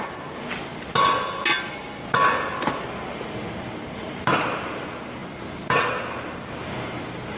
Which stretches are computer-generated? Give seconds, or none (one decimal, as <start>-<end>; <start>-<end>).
none